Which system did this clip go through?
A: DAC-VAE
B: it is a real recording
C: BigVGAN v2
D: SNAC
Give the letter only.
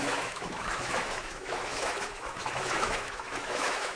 A